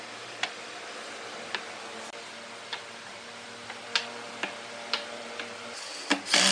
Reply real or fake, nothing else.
real